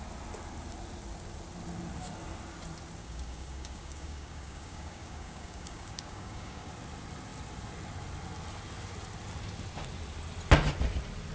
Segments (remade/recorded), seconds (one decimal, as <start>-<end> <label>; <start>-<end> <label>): 0.0-3.0 recorded; 3.0-6.7 remade; 6.7-11.3 recorded